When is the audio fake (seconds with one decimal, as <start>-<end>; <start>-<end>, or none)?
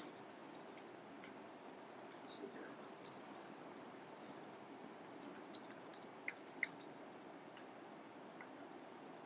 0.0-9.3